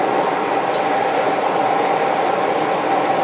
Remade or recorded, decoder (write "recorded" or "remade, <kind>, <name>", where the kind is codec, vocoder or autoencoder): recorded